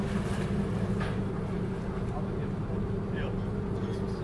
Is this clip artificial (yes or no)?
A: no